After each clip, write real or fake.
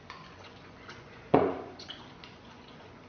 fake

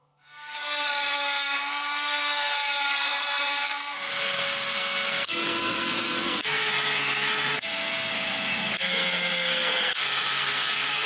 fake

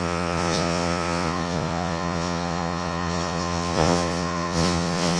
fake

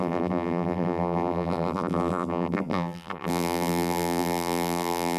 fake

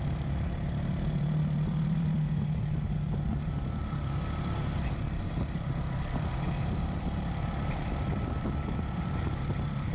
fake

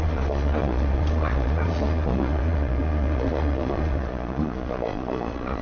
fake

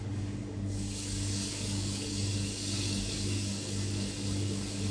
fake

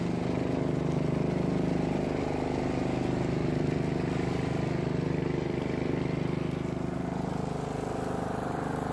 real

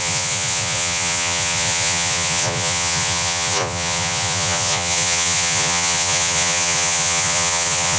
fake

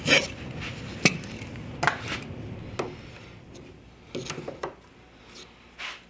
real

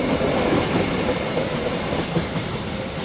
real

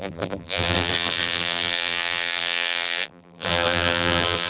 fake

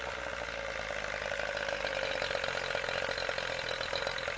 real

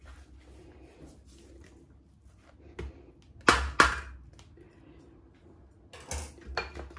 real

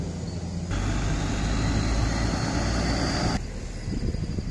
real